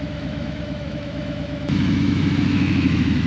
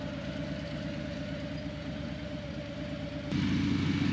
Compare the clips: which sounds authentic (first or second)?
second